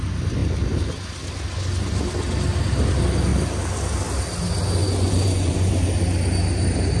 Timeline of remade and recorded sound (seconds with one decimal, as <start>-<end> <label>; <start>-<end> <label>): 0.0-4.8 recorded; 4.8-5.7 remade; 5.7-7.0 recorded